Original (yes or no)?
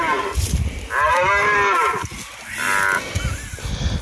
yes